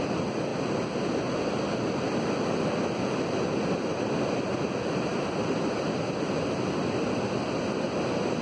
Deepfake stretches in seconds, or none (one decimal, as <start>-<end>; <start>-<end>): none